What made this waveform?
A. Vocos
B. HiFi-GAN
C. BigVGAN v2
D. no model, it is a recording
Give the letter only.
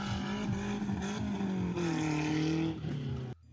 D